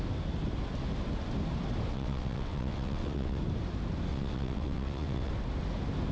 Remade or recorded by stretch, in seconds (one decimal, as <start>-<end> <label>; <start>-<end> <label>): 0.0-1.9 recorded; 1.9-3.4 remade; 3.4-4.1 recorded; 4.1-5.3 remade; 5.3-6.1 recorded